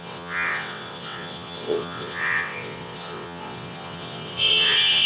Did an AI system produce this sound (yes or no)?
yes